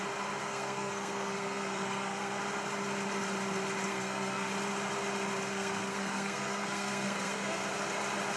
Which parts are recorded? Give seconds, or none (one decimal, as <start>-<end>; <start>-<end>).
0.0-0.4; 2.4-3.9; 4.5-5.5; 7.6-8.4

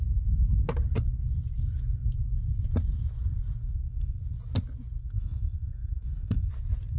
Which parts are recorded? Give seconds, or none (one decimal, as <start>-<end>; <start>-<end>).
0.0-3.6; 4.2-5.0; 6.5-7.0